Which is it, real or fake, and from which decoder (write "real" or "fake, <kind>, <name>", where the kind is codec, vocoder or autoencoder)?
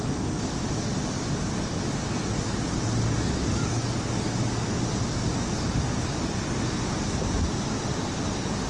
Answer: real